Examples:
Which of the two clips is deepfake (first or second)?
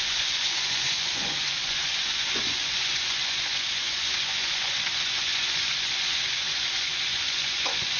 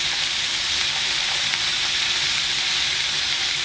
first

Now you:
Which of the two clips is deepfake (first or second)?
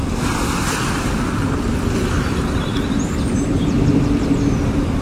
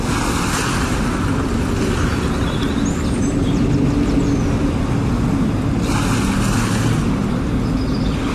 first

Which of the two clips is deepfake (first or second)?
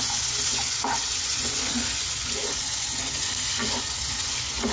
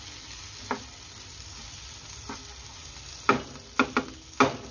first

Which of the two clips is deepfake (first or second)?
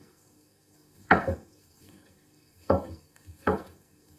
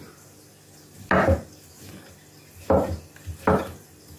first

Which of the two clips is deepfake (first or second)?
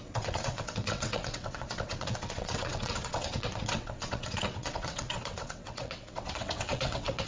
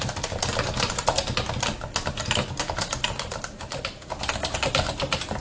first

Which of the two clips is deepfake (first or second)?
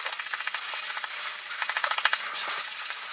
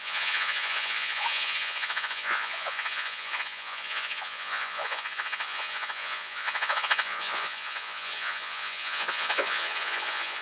second